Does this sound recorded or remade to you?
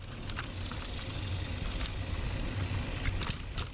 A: recorded